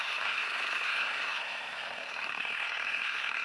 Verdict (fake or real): fake